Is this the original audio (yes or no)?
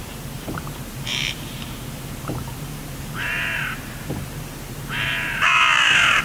no